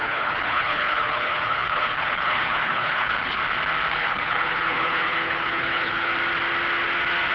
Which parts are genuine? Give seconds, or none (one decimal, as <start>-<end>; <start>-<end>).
3.4-3.9; 6.1-7.3